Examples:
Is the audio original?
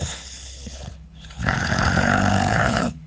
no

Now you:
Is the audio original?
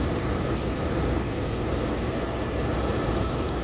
no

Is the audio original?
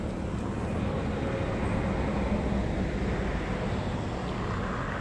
yes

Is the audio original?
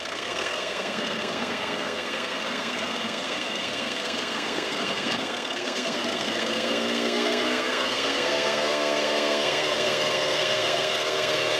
no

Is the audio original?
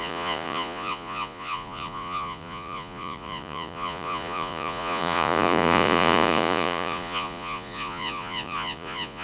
no